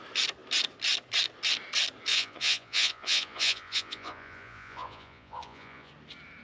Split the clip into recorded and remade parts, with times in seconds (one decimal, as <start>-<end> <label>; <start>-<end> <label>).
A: 0.0-2.1 recorded; 2.1-5.9 remade; 5.9-6.4 recorded